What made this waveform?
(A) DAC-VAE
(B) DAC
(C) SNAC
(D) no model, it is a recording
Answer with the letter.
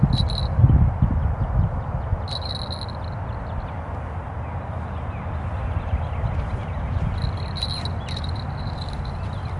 D